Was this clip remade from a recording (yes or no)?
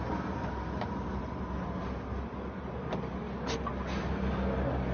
no